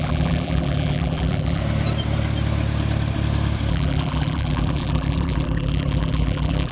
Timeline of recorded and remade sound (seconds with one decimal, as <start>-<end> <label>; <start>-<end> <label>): 0.0-1.6 remade; 1.6-3.7 recorded; 3.7-6.7 remade